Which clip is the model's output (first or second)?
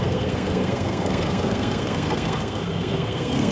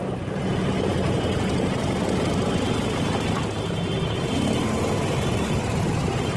first